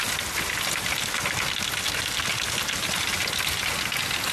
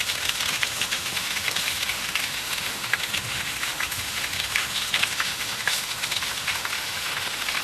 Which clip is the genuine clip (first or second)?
first